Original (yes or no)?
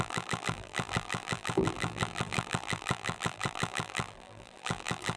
no